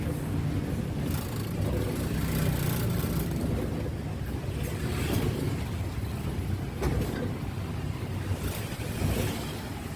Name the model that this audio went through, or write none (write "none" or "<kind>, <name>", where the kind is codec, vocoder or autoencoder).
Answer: none